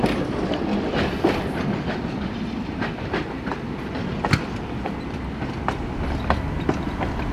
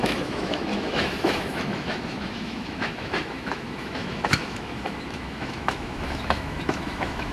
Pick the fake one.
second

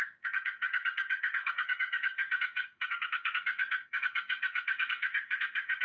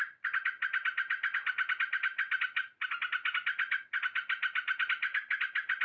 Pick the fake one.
first